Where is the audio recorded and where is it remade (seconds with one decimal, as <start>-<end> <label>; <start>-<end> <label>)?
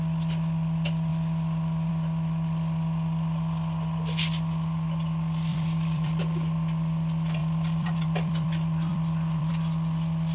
0.0-5.5 recorded; 5.5-6.2 remade; 6.2-7.4 recorded; 7.4-9.5 remade; 9.5-10.3 recorded